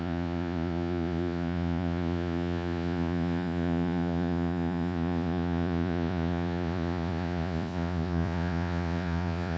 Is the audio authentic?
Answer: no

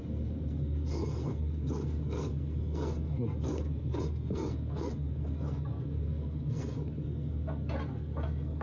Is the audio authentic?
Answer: no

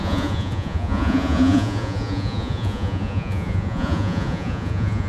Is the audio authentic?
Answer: no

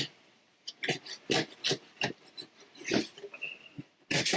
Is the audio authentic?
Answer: yes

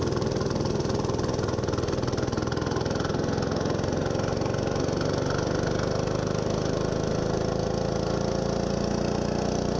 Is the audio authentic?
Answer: yes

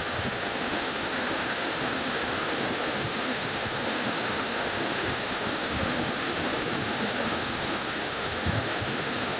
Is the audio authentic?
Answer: no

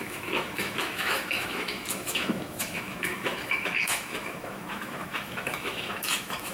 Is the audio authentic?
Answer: no